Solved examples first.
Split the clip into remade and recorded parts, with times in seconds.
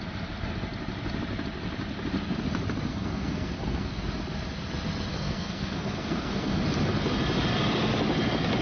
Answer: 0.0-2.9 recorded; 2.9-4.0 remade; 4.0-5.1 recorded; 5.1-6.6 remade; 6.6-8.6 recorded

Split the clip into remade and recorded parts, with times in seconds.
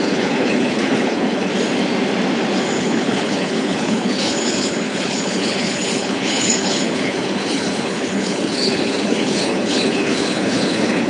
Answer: 0.0-1.5 remade; 1.5-2.7 recorded; 2.7-11.1 remade